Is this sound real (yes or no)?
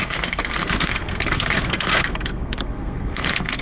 no